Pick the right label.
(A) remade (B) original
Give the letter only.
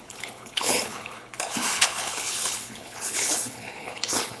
A